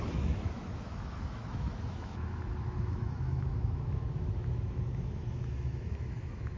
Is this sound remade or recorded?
remade